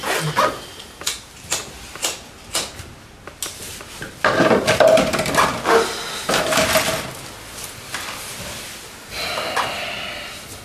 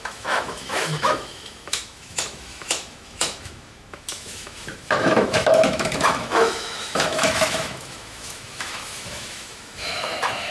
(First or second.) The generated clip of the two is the second